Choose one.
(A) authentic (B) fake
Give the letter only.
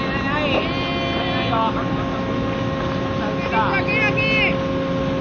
A